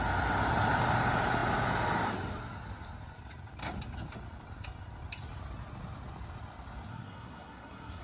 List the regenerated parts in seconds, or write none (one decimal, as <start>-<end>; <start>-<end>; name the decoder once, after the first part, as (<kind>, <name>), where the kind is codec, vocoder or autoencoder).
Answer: 6.9-8.0 (codec, SNAC)